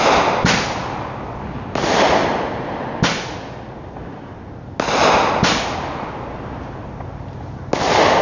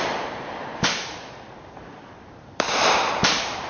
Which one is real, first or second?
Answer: first